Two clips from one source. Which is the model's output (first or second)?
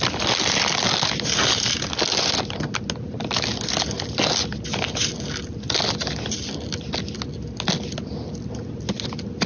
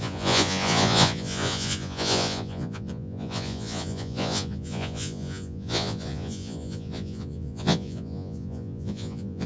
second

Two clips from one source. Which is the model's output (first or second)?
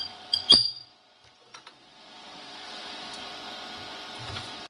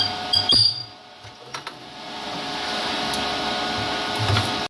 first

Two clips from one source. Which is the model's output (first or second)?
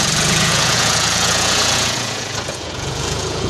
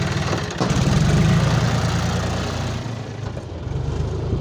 first